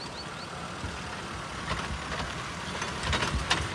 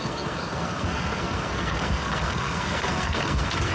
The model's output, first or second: second